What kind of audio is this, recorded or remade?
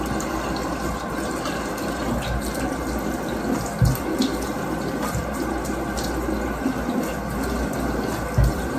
recorded